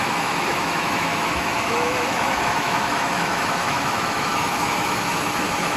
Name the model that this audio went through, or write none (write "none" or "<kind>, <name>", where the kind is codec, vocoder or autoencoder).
autoencoder, DAC-VAE